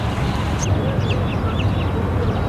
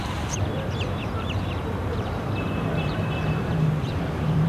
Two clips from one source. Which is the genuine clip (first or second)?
first